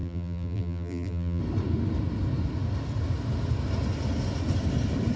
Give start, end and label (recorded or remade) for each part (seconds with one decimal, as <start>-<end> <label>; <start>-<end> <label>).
0.0-1.4 remade; 1.4-5.2 recorded